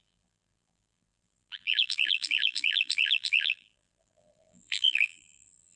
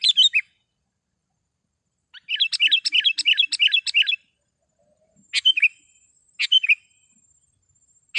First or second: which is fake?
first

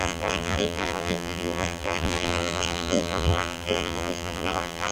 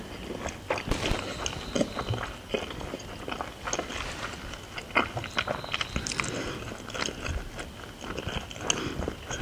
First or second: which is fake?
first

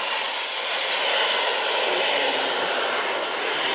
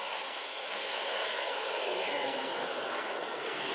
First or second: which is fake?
second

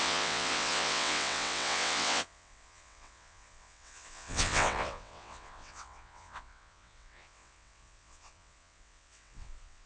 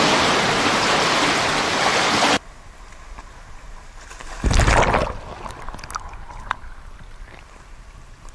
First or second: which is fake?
first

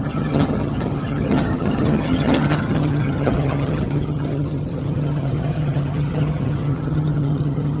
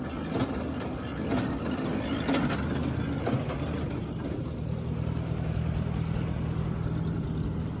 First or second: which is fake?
first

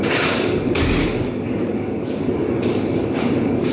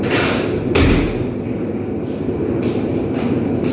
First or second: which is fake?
first